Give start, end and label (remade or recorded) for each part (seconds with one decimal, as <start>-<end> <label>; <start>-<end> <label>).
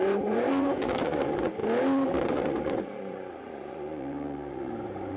0.0-1.6 remade; 1.6-2.2 recorded; 2.2-5.2 remade